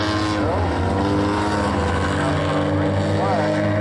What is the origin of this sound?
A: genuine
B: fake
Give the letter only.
A